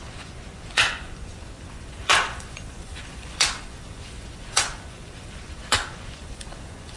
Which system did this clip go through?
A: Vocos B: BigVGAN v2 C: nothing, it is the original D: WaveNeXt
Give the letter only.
A